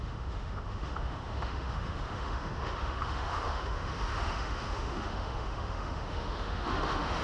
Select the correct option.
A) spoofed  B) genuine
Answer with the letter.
A